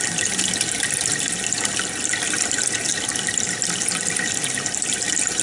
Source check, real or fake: real